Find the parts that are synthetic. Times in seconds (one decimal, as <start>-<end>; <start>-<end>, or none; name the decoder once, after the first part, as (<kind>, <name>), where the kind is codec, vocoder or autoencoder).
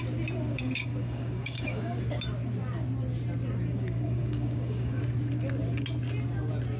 0.5-2.0 (codec, DAC); 3.7-5.0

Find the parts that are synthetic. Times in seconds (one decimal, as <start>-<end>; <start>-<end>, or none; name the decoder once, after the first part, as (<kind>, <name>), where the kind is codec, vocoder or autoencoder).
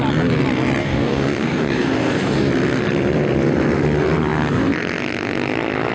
0.8-2.5 (codec, DAC)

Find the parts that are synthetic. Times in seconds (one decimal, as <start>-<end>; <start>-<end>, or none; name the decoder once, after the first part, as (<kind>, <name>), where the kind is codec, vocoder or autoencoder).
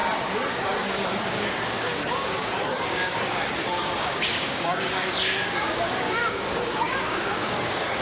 0.5-8.0 (codec, DAC)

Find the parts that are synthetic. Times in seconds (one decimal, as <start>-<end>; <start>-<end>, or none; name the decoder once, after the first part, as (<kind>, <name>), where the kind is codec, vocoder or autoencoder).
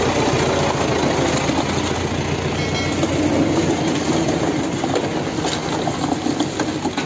none